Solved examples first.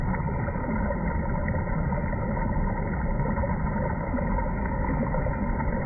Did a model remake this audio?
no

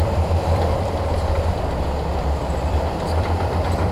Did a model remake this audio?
yes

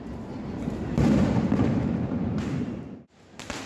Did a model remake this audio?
yes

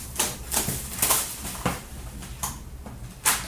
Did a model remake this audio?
yes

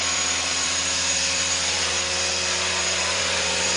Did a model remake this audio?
yes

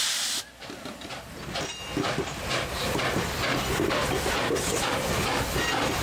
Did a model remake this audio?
no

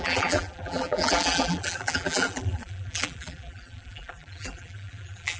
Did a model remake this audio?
yes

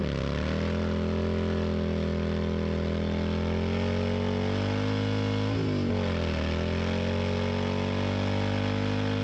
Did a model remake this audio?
no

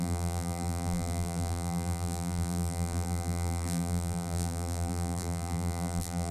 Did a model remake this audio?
yes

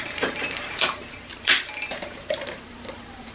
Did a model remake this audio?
yes